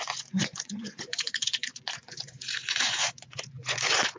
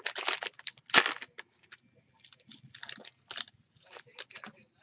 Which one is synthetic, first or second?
first